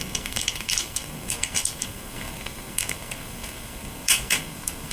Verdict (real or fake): fake